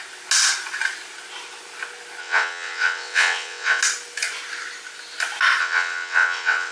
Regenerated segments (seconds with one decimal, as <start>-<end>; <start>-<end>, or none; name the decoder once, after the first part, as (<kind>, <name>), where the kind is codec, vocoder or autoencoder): 2.2-3.8 (vocoder, WaveNeXt); 5.6-6.7